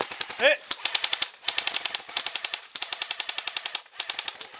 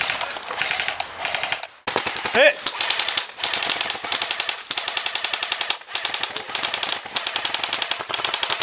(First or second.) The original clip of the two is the second